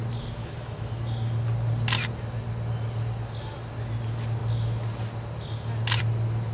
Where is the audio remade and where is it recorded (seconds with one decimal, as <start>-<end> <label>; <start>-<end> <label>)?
0.0-0.4 recorded; 0.4-1.0 remade; 1.0-6.5 recorded